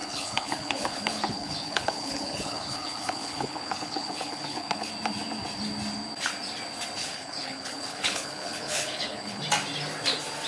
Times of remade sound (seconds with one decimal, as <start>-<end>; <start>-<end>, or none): 0.0-4.9; 7.0-9.4